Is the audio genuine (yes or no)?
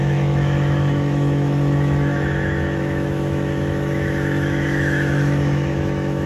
no